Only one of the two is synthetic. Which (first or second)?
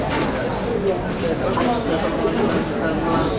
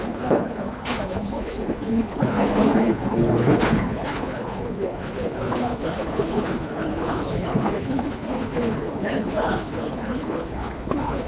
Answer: second